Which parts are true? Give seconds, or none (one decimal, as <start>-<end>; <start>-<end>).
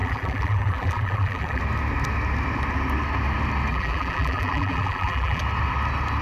1.6-3.7; 5.4-6.2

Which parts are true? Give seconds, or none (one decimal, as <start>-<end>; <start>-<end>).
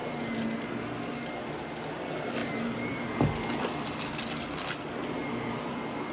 0.0-2.4; 3.0-6.1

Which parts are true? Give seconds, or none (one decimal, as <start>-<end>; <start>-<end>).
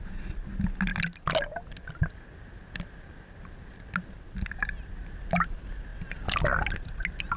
0.0-7.4